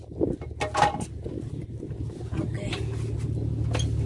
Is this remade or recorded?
recorded